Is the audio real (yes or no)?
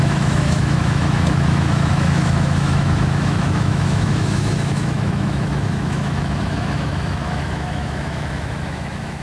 no